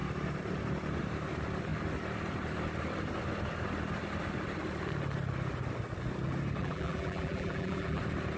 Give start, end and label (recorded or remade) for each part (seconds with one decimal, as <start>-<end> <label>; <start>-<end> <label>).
0.0-6.6 recorded; 6.6-8.0 remade; 8.0-8.4 recorded